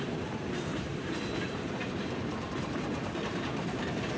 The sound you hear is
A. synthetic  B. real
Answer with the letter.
A